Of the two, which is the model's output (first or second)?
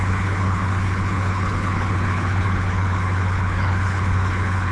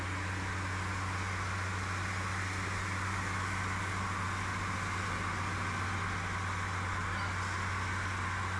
first